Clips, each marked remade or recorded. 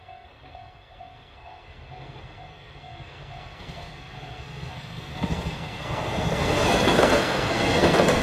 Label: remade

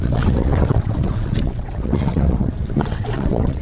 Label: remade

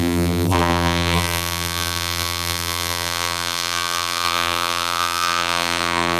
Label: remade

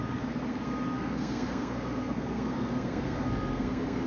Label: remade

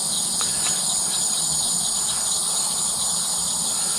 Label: recorded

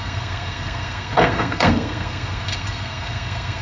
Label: remade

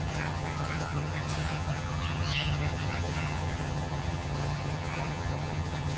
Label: remade